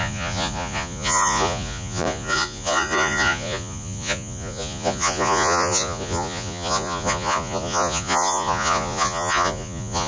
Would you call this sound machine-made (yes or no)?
yes